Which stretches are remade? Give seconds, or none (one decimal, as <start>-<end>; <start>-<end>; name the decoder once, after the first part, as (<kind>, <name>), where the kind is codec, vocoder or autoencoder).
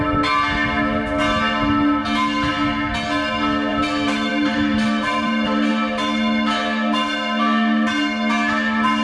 3.7-5.7 (vocoder, BigVGAN v2)